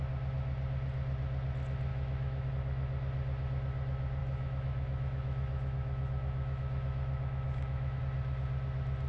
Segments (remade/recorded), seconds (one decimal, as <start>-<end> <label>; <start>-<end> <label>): 0.0-1.9 recorded; 1.9-2.5 remade; 2.5-4.2 recorded; 4.2-8.0 remade; 8.0-9.1 recorded